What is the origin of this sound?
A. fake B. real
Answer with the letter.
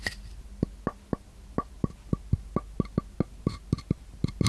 B